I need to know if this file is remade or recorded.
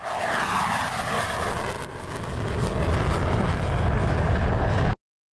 recorded